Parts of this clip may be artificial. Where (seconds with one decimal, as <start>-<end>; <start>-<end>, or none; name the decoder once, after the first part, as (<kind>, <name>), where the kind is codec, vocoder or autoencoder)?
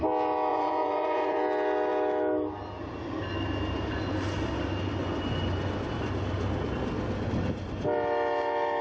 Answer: 0.5-1.4 (vocoder, Vocos); 5.0-5.8